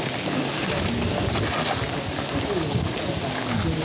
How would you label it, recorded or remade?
recorded